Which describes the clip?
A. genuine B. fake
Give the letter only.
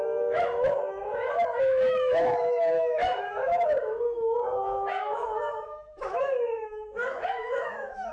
B